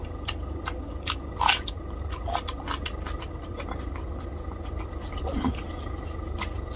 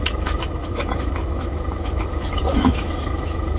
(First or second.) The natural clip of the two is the first